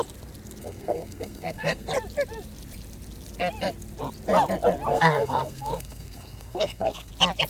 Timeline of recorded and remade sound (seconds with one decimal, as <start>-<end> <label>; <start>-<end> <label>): 0.0-0.6 recorded; 0.6-1.9 remade; 1.9-4.9 recorded; 4.9-7.1 remade; 7.1-7.5 recorded